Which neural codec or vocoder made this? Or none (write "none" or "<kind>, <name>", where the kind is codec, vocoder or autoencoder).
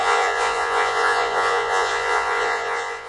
vocoder, Vocos